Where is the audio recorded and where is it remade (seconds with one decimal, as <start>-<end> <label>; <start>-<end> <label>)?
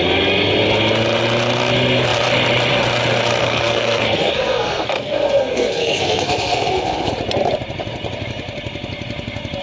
0.0-3.4 recorded; 3.4-7.1 remade; 7.1-9.6 recorded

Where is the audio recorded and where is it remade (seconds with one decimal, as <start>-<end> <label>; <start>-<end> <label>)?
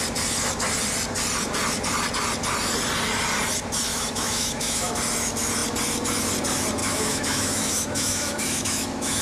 0.0-3.9 recorded; 3.9-5.0 remade; 5.0-6.8 recorded; 6.8-9.2 remade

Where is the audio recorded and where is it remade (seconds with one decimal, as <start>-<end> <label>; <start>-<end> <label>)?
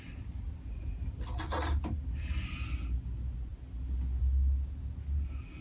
0.0-5.6 recorded